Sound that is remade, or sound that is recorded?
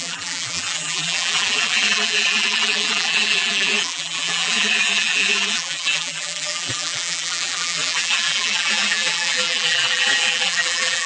remade